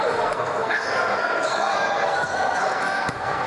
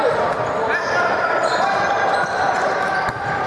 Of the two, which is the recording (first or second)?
second